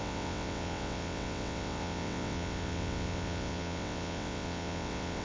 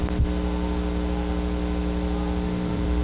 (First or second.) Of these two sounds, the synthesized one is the first